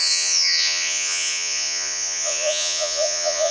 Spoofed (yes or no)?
yes